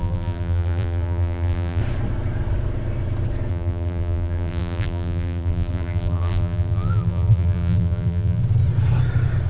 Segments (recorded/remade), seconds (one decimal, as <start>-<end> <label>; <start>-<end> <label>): 0.0-1.8 remade; 1.8-3.5 recorded; 3.5-8.4 remade; 8.4-9.5 recorded